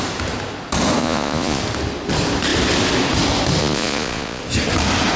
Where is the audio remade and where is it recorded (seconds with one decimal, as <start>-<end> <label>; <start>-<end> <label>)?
0.0-1.0 recorded; 1.0-1.6 remade; 1.6-3.6 recorded; 3.6-4.4 remade; 4.4-5.2 recorded